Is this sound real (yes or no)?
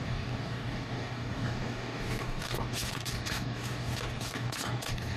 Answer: no